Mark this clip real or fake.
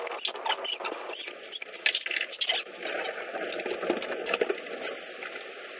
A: real